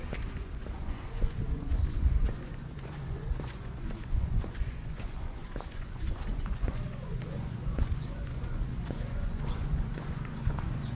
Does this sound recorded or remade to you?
remade